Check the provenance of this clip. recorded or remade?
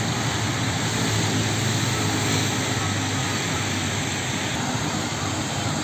recorded